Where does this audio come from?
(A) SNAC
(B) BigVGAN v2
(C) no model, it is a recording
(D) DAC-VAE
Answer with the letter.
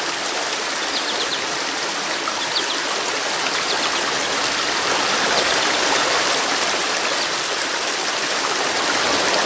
B